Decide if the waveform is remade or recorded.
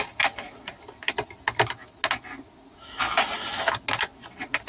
recorded